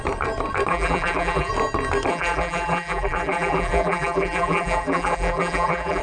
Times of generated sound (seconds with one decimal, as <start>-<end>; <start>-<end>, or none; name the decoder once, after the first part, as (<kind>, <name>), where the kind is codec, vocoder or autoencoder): 0.7-1.5 (vocoder, BigVGAN v2); 2.1-6.0